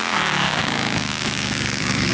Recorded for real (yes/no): no